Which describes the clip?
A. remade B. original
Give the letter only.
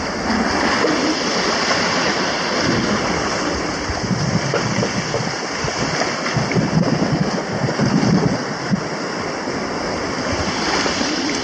B